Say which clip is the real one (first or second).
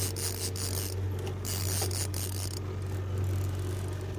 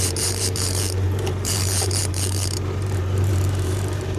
first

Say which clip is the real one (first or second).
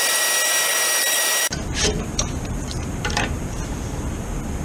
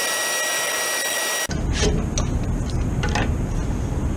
second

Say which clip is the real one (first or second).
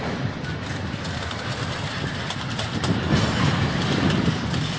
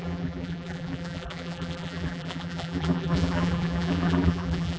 first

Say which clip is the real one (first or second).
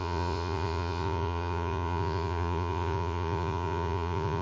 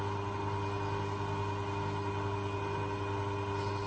second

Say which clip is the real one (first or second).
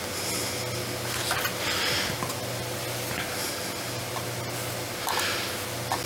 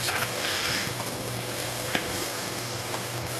first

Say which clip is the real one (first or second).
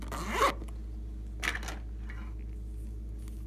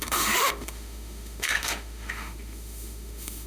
first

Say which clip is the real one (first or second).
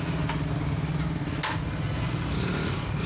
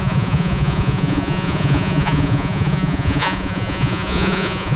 first